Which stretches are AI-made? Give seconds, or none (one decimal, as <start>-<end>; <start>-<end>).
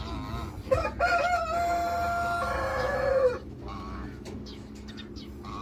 2.7-4.9